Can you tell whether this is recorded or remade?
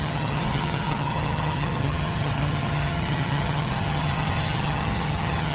remade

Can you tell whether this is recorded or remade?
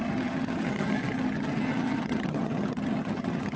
remade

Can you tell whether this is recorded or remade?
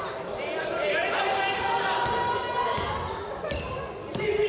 recorded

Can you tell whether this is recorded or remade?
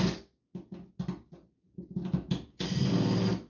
recorded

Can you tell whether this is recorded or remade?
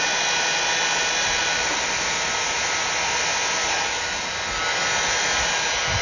recorded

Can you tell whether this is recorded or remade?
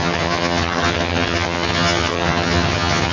remade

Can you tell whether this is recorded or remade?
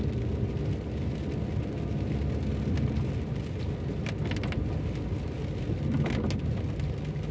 recorded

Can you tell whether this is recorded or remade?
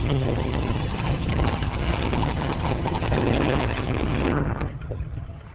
remade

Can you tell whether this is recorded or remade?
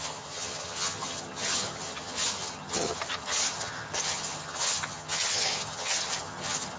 remade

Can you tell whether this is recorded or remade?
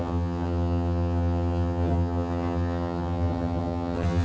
remade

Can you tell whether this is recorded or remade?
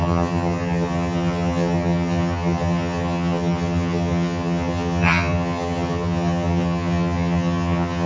remade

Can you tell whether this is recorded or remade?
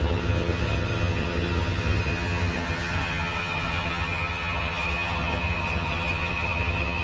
remade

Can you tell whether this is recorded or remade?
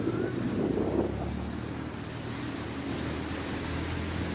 recorded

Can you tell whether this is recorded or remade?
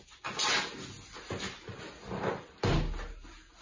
recorded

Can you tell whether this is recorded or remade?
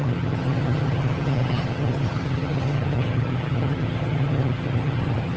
remade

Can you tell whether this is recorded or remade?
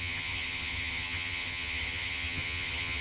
remade